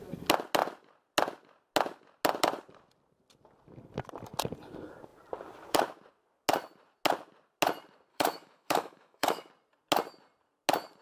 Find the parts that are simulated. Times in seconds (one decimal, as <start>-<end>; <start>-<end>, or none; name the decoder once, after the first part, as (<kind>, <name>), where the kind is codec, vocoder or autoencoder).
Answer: 8.1-9.5 (autoencoder, DAC-VAE)